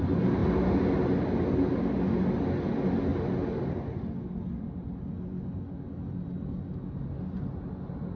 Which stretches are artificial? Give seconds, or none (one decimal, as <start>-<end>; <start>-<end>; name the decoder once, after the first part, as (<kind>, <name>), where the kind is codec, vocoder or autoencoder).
none